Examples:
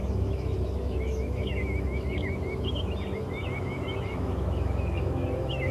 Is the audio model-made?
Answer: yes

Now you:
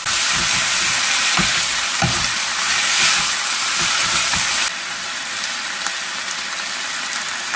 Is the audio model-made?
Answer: no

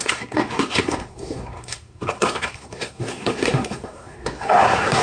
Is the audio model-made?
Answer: yes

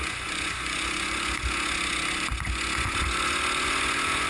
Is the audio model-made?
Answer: yes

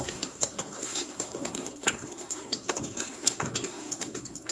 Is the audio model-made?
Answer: yes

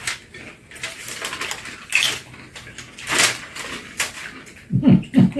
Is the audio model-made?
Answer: no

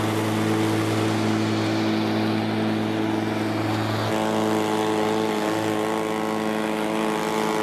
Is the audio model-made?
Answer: no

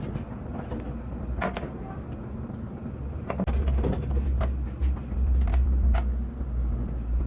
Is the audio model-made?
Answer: no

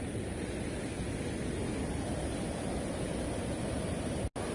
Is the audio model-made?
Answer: no